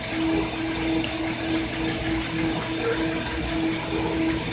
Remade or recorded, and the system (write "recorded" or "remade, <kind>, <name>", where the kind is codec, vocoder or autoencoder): recorded